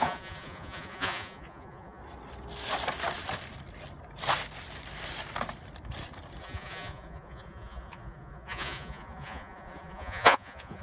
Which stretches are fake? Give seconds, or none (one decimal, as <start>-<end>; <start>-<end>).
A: 0.0-2.0; 6.4-10.8